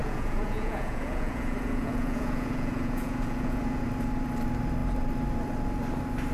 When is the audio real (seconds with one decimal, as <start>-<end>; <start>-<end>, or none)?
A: 3.8-6.3